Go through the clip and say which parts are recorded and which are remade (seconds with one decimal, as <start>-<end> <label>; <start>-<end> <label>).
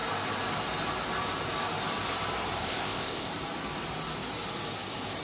0.0-2.6 recorded; 2.6-3.3 remade; 3.3-5.2 recorded